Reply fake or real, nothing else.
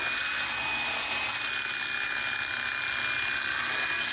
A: real